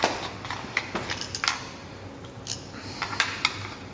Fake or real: real